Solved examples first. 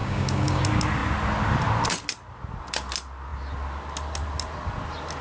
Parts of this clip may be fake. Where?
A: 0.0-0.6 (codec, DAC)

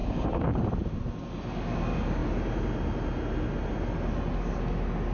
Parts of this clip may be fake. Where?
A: 0.0-0.6 (codec, DAC)